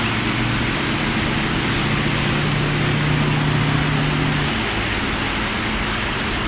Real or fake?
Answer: real